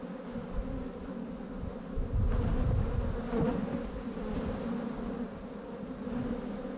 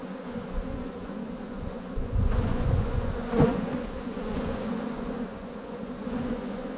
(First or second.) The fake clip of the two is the second